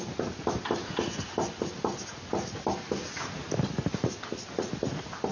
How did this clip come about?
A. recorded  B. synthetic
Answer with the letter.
A